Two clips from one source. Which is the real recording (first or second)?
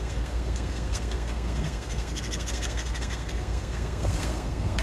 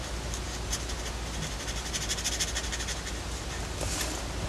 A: second